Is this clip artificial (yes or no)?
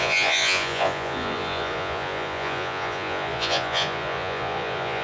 yes